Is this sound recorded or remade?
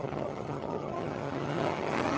remade